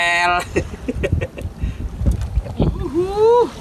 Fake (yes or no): no